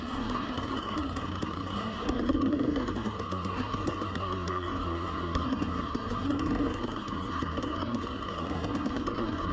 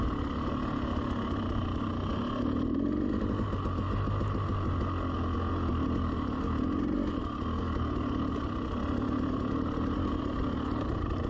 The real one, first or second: second